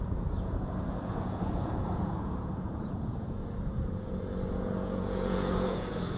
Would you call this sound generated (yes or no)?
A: yes